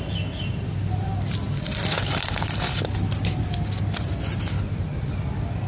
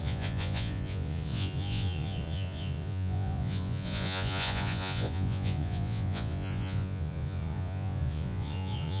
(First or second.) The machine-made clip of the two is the second